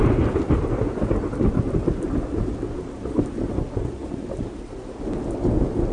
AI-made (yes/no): no